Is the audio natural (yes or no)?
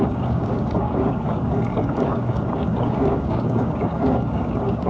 no